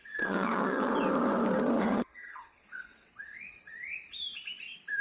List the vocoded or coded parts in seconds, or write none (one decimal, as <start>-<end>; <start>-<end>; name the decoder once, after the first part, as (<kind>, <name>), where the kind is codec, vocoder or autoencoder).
0.0-0.9 (vocoder, WaveNeXt); 1.8-3.1